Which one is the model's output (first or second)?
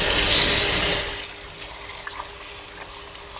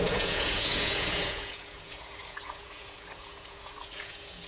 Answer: second